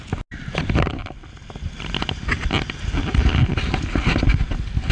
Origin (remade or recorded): recorded